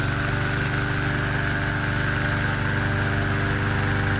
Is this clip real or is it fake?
real